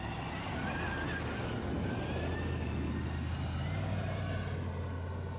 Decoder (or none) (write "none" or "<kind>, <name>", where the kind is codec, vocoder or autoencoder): none